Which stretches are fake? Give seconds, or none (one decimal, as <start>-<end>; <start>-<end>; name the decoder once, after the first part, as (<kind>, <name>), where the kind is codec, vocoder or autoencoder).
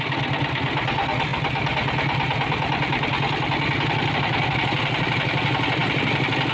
none